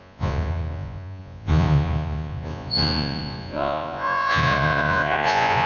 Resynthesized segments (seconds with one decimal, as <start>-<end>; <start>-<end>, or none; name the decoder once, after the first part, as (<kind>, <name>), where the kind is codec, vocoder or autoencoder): 0.0-5.7 (vocoder, Vocos)